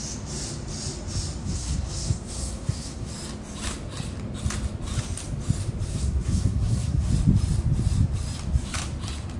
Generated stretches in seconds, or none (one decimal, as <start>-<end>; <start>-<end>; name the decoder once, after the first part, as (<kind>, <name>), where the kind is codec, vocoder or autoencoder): 1.4-3.1 (codec, SNAC); 5.9-7.1